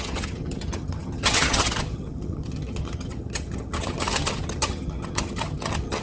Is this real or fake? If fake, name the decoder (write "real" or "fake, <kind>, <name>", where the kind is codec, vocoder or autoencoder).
fake, vocoder, HiFi-GAN